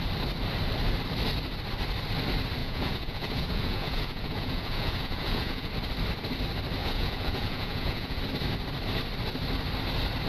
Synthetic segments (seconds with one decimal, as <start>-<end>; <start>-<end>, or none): 2.6-5.7; 6.8-8.2